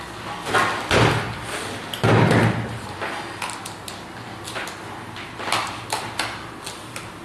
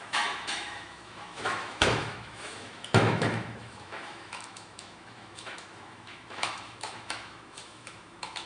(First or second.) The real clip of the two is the first